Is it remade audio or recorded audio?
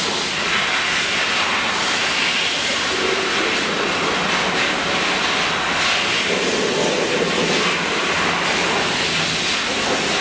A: recorded